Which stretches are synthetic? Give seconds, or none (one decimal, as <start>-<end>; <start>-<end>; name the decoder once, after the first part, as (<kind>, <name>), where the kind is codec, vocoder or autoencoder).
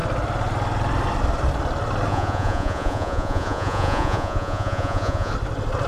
2.1-5.3 (vocoder, Vocos)